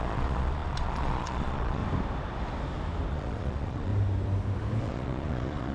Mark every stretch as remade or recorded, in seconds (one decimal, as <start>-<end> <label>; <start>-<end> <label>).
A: 0.0-1.8 remade; 1.8-3.1 recorded; 3.1-3.9 remade; 3.9-4.8 recorded; 4.8-5.7 remade